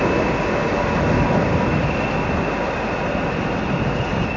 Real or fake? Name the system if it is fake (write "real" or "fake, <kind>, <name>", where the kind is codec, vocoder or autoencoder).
real